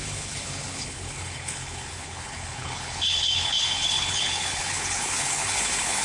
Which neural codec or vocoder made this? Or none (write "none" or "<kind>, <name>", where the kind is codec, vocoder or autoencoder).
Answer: codec, HILCodec